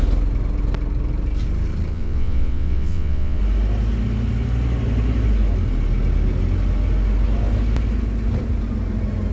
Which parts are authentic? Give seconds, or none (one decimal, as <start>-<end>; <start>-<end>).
0.0-1.9; 3.4-9.3